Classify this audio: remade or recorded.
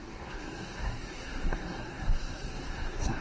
remade